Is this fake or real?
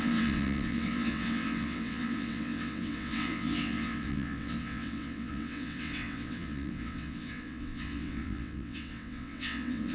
fake